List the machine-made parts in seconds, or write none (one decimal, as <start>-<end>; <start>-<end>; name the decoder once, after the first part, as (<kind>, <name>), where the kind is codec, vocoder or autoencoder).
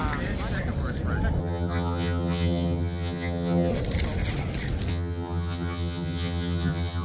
1.4-3.7 (vocoder, HiFi-GAN); 4.9-7.0